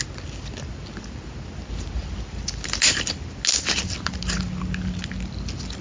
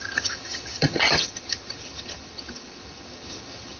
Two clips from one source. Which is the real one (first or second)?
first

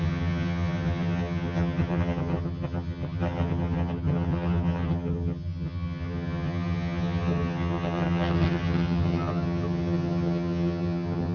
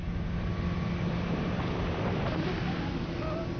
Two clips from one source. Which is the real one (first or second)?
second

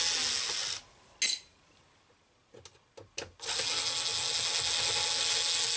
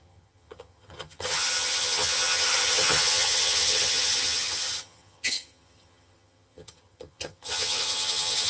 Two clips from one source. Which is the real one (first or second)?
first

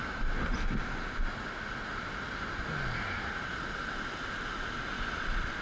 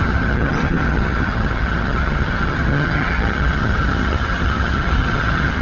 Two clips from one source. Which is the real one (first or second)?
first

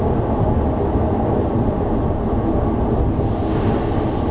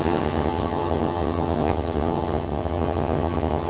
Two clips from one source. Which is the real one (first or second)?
first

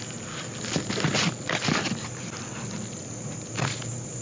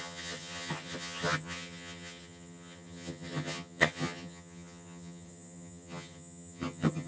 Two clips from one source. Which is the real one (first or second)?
first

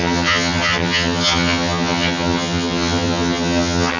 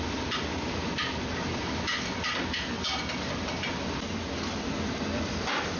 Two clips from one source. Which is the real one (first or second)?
second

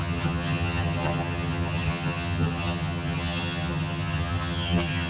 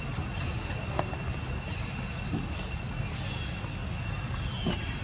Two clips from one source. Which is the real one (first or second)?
second